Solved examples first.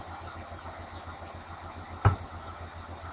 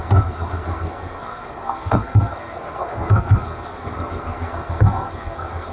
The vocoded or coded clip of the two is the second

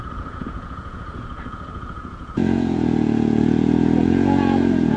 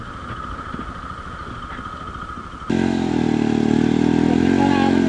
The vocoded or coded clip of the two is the first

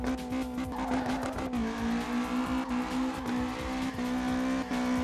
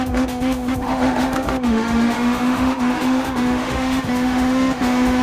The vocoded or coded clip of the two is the second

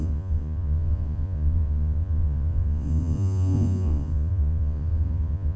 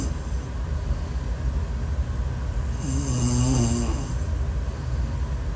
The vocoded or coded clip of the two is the first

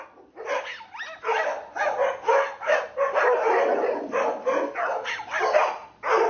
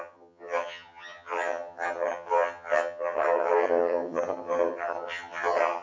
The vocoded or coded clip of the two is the second